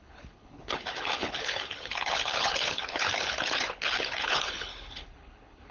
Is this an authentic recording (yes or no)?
no